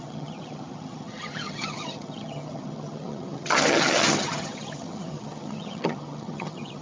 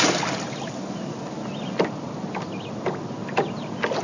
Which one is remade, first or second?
first